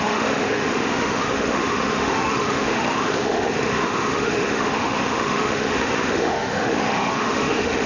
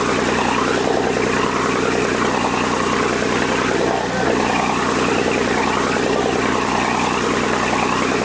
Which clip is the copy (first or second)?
first